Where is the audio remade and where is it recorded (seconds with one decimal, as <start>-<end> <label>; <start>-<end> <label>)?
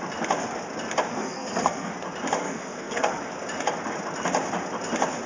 0.0-1.1 recorded; 1.1-1.9 remade; 1.9-2.4 recorded; 2.4-3.2 remade; 3.2-5.3 recorded